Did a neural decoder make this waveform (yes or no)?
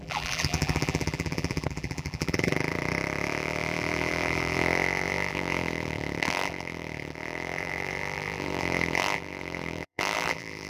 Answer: yes